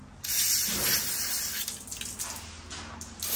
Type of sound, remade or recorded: recorded